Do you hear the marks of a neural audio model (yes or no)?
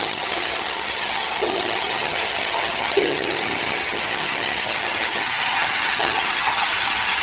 yes